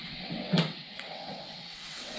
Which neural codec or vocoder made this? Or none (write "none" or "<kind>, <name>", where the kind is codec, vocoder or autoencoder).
vocoder, WaveNeXt